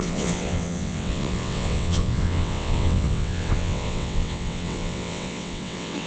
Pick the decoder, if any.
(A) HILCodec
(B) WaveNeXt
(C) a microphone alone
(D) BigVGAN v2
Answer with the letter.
B